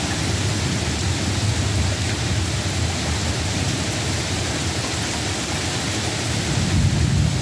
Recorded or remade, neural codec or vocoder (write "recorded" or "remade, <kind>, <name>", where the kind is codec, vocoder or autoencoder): recorded